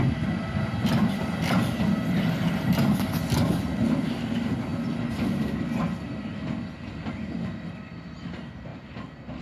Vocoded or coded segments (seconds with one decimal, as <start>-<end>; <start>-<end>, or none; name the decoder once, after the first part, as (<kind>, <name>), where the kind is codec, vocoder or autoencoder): 8.7-9.4 (vocoder, BigVGAN v2)